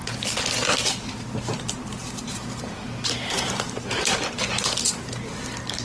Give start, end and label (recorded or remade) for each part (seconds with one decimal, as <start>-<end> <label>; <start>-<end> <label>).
0.0-1.6 recorded; 1.6-5.8 remade